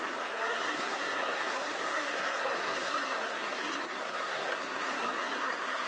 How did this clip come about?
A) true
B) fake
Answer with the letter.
B